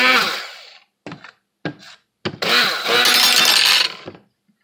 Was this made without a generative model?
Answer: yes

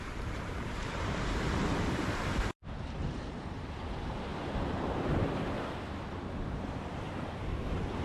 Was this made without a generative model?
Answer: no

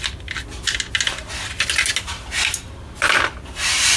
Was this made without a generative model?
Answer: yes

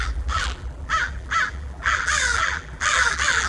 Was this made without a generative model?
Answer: no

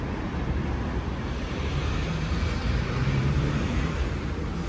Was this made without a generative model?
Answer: no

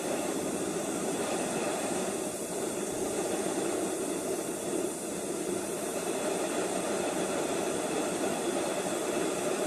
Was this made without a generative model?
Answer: no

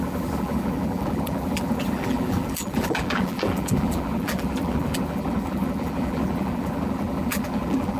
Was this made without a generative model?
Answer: no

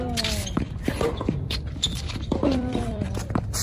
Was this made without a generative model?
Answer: no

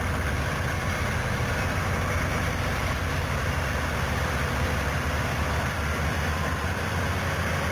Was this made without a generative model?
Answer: yes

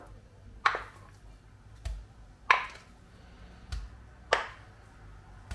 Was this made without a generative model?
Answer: yes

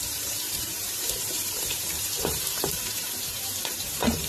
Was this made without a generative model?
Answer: no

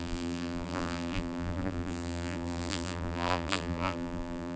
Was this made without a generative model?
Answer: no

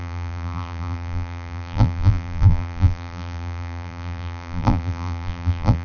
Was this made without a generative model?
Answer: no